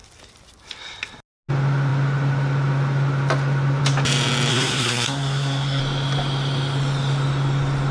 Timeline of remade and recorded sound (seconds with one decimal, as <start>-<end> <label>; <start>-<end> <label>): 0.0-4.5 recorded; 4.5-5.8 remade; 5.8-7.9 recorded